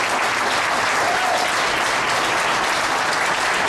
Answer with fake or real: real